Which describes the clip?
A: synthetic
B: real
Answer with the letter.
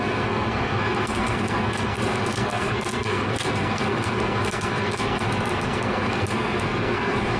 A